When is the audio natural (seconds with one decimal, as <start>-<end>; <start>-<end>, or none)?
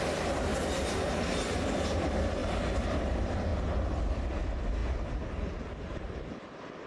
0.5-1.2; 2.4-3.1; 3.5-4.1